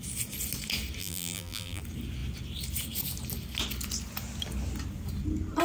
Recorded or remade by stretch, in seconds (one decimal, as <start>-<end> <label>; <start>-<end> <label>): 0.0-1.0 recorded; 1.0-1.8 remade; 1.8-5.6 recorded